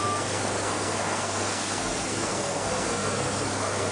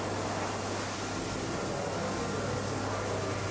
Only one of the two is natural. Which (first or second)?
second